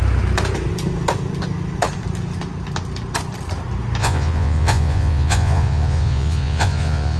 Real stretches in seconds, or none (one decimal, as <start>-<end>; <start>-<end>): 0.0-4.0